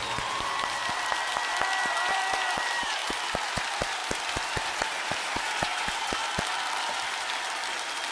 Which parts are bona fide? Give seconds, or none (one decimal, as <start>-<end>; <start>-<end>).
0.8-2.1; 3.0-3.5; 4.0-4.5; 6.2-8.1